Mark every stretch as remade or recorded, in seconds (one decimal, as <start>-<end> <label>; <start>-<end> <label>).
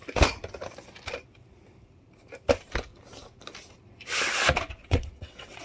0.0-4.8 recorded; 4.8-5.6 remade